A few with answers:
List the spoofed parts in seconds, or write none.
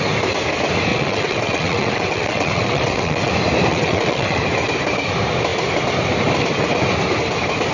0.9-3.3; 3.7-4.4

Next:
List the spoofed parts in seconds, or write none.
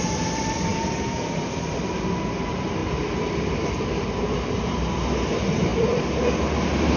0.7-1.5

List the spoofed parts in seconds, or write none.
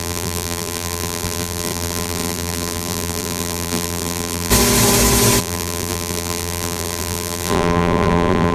0.0-4.5; 5.4-8.5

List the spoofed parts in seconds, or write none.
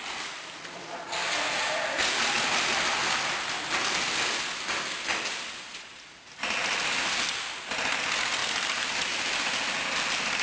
none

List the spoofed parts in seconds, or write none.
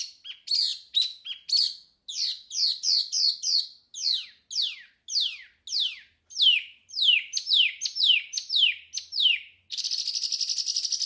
none